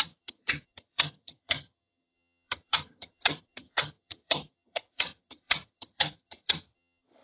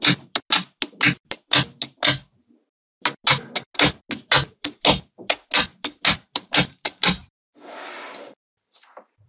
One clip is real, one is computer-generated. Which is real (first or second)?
second